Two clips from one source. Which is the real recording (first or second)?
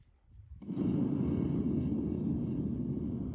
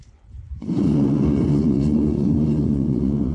first